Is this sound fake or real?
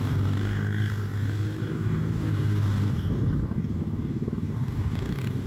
fake